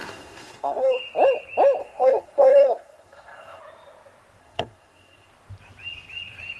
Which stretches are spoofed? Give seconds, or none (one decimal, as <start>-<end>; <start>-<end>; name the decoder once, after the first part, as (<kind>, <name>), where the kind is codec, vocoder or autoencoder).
0.0-1.0 (codec, SNAC); 1.8-3.6; 4.4-5.3